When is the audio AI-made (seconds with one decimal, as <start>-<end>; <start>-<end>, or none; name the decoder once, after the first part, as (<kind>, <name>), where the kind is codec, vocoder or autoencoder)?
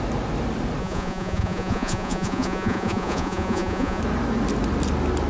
0.8-4.0 (vocoder, Vocos)